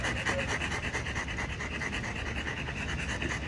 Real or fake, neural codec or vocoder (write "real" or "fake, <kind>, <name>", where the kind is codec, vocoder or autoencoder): real